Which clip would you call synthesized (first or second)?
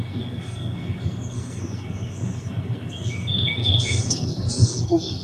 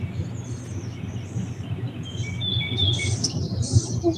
first